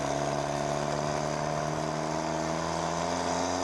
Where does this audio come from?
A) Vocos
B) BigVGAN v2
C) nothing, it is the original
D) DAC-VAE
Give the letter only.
C